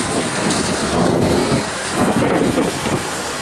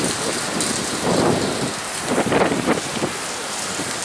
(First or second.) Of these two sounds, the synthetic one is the first